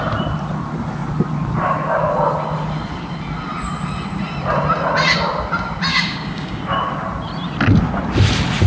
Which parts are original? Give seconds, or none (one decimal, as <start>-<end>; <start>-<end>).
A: 0.0-5.9; 6.6-8.7